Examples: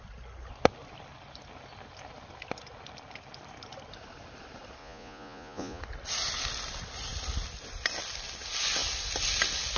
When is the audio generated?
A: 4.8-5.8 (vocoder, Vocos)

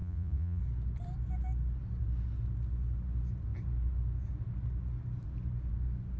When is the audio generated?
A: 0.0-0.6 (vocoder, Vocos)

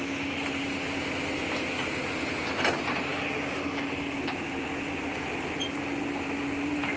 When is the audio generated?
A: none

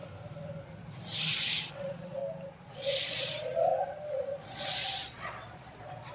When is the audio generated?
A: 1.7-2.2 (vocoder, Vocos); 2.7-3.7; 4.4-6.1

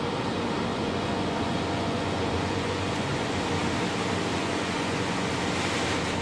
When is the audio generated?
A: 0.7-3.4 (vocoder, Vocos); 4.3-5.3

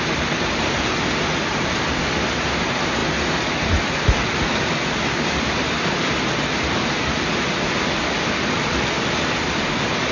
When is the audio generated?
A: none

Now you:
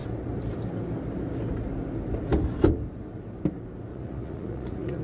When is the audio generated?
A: 3.9-5.0 (vocoder, Vocos)